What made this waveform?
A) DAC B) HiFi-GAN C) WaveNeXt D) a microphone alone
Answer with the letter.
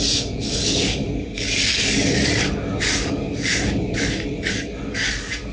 A